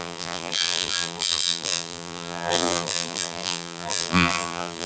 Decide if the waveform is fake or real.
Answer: fake